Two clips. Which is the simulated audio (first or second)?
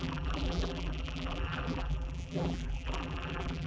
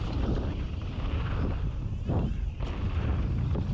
first